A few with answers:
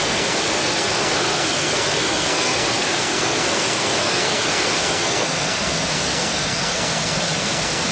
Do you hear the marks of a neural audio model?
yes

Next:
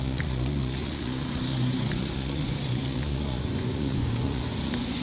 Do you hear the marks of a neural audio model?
yes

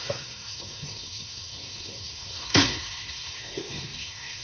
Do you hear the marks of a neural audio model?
yes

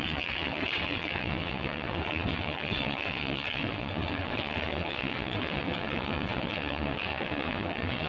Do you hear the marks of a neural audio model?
yes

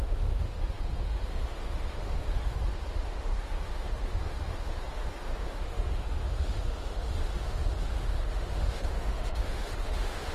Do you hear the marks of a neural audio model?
yes